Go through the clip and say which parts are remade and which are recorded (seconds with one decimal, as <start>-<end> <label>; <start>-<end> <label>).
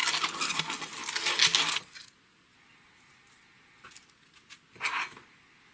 0.0-0.6 remade; 0.6-5.7 recorded